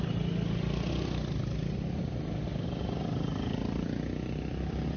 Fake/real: real